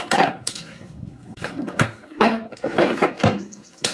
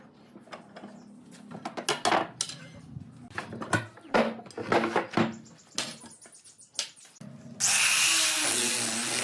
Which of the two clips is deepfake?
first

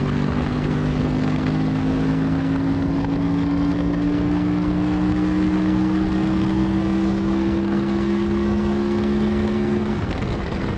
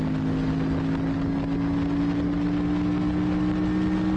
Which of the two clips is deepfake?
first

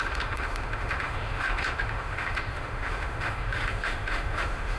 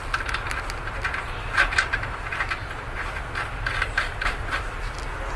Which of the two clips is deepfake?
first